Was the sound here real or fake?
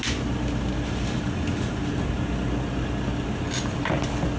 real